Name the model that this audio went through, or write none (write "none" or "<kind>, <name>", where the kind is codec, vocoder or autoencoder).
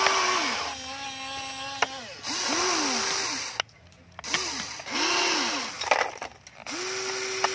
none